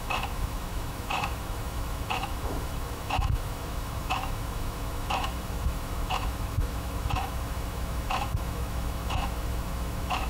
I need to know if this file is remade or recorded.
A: remade